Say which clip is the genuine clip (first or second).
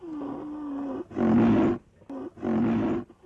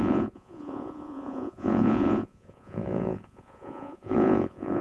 first